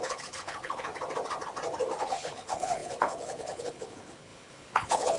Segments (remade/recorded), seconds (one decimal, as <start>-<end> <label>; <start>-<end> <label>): 0.0-0.9 remade; 0.9-2.0 recorded; 2.0-5.2 remade